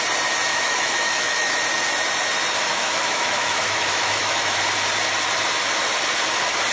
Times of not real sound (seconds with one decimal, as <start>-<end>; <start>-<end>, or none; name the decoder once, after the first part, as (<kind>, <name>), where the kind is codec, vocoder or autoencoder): 0.5-1.6 (autoencoder, DAC-VAE); 2.7-4.6